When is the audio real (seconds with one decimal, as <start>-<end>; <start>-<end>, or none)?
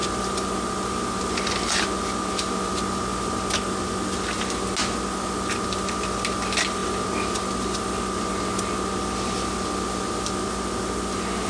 0.0-11.5